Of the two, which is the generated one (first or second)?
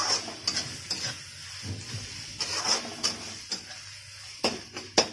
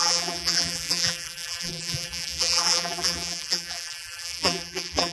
second